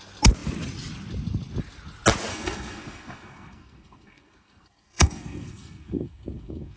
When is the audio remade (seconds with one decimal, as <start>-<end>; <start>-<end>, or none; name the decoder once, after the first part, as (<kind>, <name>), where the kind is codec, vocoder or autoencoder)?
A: 2.3-6.8 (codec, SNAC)